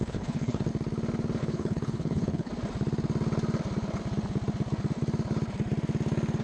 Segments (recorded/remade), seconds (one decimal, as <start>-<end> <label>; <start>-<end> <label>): 0.0-0.7 remade; 0.7-1.4 recorded; 1.4-2.5 remade; 2.5-6.4 recorded